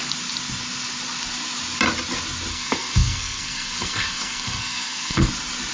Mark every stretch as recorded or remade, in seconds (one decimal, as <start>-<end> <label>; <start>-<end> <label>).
0.0-2.5 recorded; 2.5-5.3 remade; 5.3-5.7 recorded